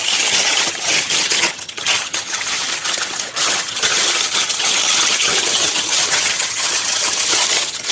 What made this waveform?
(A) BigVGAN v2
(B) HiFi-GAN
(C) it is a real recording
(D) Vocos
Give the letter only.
B